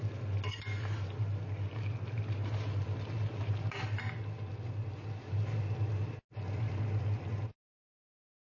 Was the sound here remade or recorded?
recorded